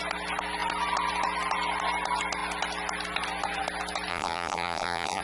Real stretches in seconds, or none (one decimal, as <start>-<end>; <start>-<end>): 0.0-4.1